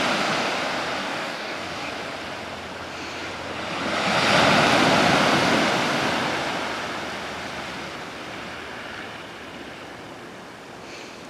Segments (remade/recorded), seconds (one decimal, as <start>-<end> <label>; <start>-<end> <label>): 0.0-1.0 recorded; 1.0-1.9 remade; 1.9-11.3 recorded